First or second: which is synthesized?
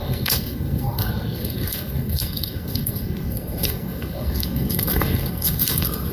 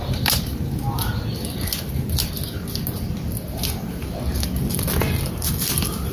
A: first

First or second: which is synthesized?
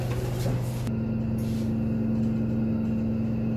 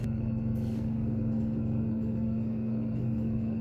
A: second